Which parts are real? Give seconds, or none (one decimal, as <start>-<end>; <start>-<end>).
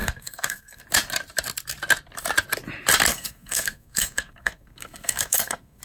0.8-3.1